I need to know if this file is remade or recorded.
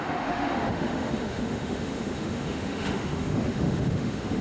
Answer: remade